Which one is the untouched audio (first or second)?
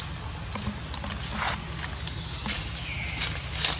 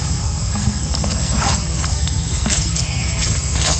first